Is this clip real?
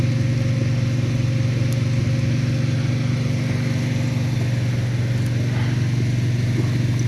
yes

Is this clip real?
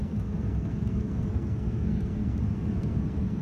no